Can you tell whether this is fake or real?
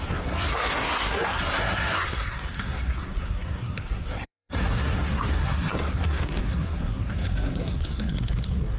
fake